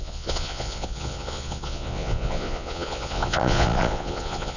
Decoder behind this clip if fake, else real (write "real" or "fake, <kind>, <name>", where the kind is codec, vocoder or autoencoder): fake, vocoder, Vocos